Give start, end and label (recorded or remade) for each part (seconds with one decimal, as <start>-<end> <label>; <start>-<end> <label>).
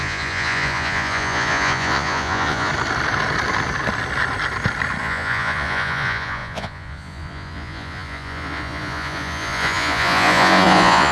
0.0-2.7 remade; 2.7-5.0 recorded; 5.0-11.1 remade